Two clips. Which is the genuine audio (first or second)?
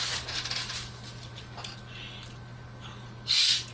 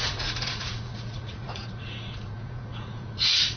first